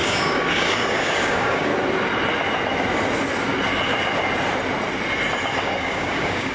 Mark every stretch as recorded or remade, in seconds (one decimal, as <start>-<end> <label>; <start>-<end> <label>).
0.0-1.7 remade; 1.7-5.6 recorded; 5.6-6.5 remade